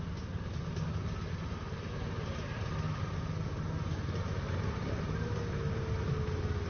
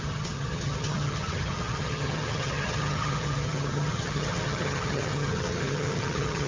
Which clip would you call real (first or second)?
first